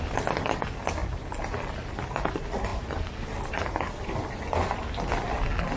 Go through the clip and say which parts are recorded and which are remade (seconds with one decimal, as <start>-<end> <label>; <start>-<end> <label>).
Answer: 0.0-5.8 recorded